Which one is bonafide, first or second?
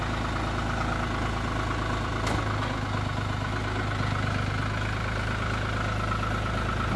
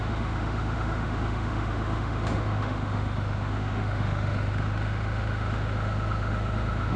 first